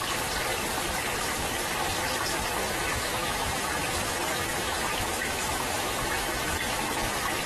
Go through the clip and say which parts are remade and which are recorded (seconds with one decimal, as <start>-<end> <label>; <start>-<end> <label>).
0.0-2.6 recorded; 2.6-7.0 remade; 7.0-7.5 recorded